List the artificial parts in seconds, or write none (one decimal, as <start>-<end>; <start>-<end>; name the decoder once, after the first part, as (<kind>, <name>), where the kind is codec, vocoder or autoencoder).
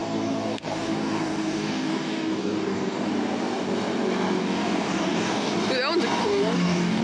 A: 0.0-3.1 (codec, DAC); 4.4-5.5; 6.2-7.0